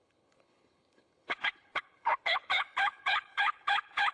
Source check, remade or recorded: remade